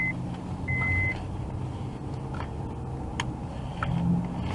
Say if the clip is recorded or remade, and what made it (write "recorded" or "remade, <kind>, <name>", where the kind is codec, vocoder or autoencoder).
recorded